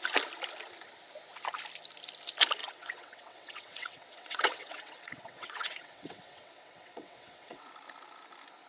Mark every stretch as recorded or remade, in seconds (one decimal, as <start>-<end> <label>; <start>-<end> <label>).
0.0-2.6 recorded; 2.6-7.7 remade; 7.7-8.7 recorded

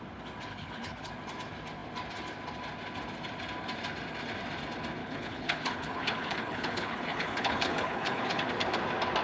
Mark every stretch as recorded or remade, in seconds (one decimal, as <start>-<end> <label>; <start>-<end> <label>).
0.0-0.5 recorded; 0.5-1.1 remade; 1.1-5.0 recorded; 5.0-8.5 remade; 8.5-9.2 recorded

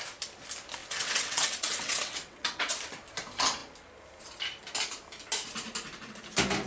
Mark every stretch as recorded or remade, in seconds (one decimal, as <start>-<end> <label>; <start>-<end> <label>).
0.0-0.8 recorded; 0.8-2.8 remade; 2.8-6.7 recorded

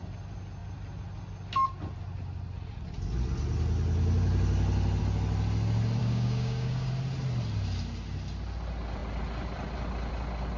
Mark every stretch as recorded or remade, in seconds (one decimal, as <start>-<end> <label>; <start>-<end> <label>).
0.0-6.0 recorded; 6.0-6.9 remade; 6.9-10.6 recorded

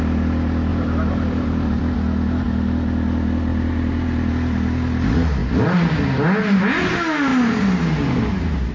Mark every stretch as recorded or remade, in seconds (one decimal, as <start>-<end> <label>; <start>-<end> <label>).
0.0-0.7 recorded; 0.7-1.8 remade; 1.8-3.5 recorded; 3.5-4.3 remade; 4.3-8.7 recorded

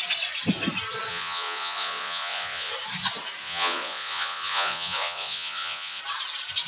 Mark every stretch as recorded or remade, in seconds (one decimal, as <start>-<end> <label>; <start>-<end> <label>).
0.0-1.1 recorded; 1.1-2.7 remade; 2.7-3.4 recorded; 3.4-6.0 remade; 6.0-6.7 recorded

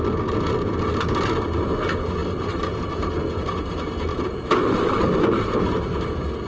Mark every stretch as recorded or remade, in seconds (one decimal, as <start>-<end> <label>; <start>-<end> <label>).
0.0-4.1 recorded; 4.1-4.6 remade; 4.6-6.5 recorded